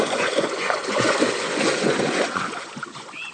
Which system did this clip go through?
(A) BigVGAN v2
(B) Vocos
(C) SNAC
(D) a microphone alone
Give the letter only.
B